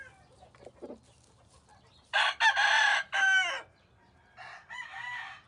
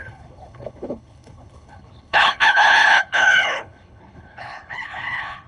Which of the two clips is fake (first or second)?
second